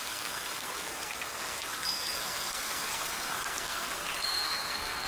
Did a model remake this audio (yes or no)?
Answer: yes